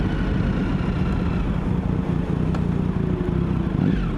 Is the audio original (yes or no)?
yes